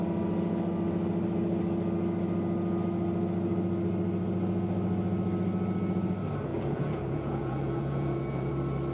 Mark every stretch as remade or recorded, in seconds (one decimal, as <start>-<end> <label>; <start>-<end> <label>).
0.0-6.5 recorded; 6.5-8.5 remade; 8.5-8.9 recorded

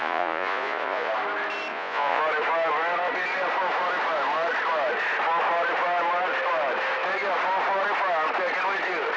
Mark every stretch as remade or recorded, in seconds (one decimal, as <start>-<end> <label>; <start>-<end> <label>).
0.0-1.1 remade; 1.1-1.7 recorded; 1.7-2.2 remade; 2.2-9.2 recorded

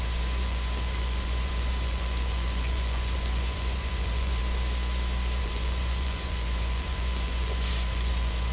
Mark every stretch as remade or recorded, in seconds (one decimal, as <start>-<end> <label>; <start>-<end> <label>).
0.0-4.4 remade; 4.4-5.4 recorded; 5.4-8.5 remade

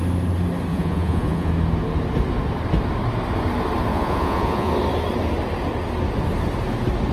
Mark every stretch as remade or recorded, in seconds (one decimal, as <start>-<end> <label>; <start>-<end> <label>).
0.0-0.7 recorded; 0.7-1.5 remade; 1.5-3.9 recorded; 3.9-4.7 remade; 4.7-7.1 recorded

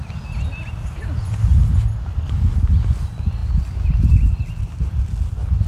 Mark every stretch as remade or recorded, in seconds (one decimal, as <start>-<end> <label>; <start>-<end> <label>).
0.0-5.7 recorded

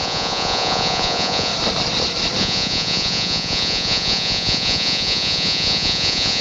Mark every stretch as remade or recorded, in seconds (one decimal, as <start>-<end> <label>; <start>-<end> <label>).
0.0-1.5 remade; 1.5-2.4 recorded; 2.4-6.4 remade